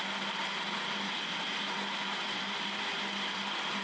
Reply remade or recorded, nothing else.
recorded